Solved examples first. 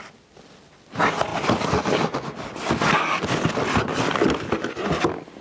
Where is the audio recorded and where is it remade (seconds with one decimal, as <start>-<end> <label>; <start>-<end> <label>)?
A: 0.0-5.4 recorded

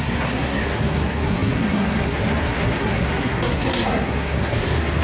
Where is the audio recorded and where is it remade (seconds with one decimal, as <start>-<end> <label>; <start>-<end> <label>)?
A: 0.0-5.0 remade

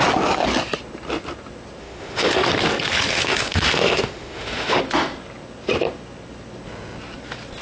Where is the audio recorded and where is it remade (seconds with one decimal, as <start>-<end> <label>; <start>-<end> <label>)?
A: 0.0-1.8 recorded; 1.8-2.5 remade; 2.5-3.1 recorded; 3.1-4.8 remade; 4.8-7.6 recorded